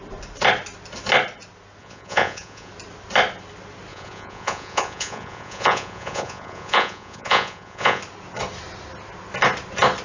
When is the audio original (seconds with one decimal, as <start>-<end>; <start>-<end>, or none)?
0.0-1.8; 2.7-3.9; 8.0-10.0